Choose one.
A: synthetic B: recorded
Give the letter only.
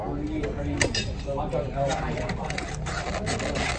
B